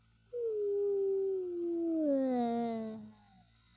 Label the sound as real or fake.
real